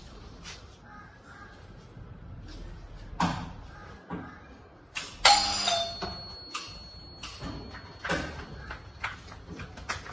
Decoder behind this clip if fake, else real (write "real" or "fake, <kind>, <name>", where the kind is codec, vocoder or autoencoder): real